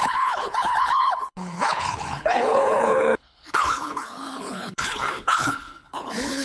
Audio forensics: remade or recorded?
remade